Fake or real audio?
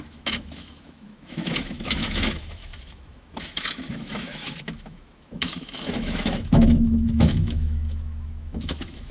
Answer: fake